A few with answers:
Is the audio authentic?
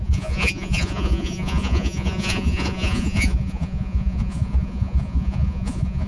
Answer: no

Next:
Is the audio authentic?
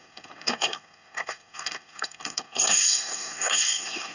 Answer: no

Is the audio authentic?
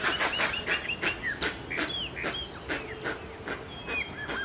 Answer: yes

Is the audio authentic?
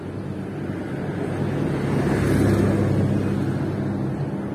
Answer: yes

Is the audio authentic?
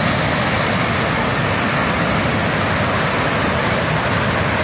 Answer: yes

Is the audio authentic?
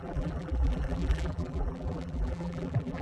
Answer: no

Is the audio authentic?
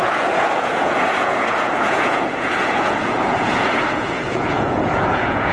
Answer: no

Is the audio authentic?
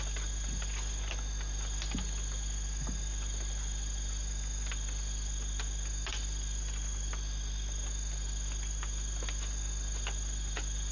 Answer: yes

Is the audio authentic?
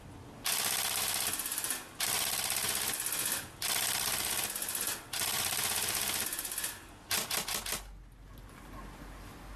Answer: yes